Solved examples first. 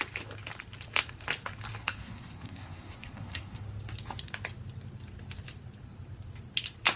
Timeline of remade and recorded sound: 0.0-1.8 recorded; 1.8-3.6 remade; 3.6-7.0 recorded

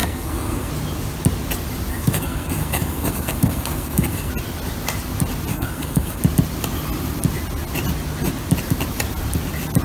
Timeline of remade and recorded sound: 0.0-0.7 remade; 0.7-1.9 recorded; 1.9-4.3 remade; 4.3-5.5 recorded; 5.5-6.2 remade; 6.2-9.8 recorded